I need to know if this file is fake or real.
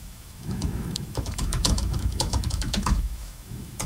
fake